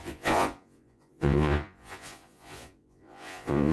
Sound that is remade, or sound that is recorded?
remade